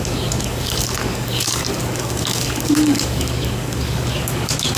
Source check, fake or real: fake